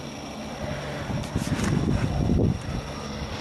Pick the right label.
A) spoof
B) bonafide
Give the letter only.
B